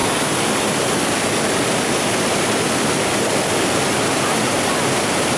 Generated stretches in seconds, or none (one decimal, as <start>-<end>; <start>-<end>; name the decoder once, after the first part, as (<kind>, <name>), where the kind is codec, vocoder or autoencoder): none